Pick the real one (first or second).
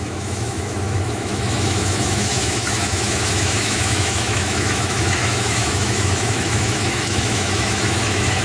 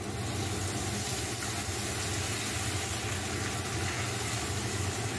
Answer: second